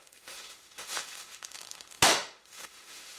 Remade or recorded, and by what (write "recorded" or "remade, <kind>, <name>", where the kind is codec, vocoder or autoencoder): remade, autoencoder, DAC-VAE